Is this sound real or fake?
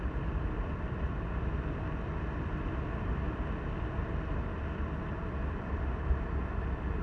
real